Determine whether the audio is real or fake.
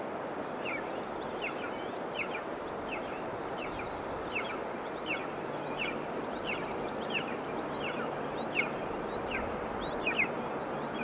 real